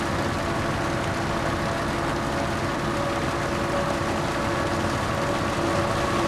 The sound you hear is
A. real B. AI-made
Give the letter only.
A